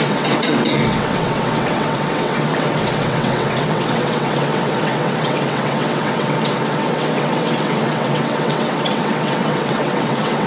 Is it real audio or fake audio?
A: fake